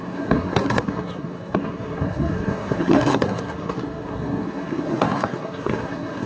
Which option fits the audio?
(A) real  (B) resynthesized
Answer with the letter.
B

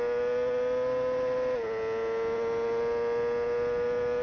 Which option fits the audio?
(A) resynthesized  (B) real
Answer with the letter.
B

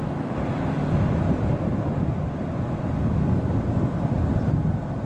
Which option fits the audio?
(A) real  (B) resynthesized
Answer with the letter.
A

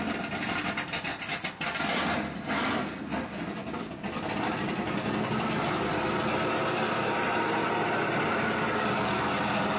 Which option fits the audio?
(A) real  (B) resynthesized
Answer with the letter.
A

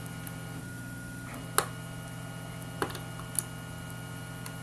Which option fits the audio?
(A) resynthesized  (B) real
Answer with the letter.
B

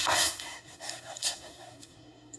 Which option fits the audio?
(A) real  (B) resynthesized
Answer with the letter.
B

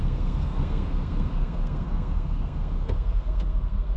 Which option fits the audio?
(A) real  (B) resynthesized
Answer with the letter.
B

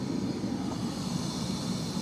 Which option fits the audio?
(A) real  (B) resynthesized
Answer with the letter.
A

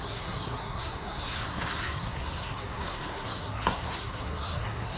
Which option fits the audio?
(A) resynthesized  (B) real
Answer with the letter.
A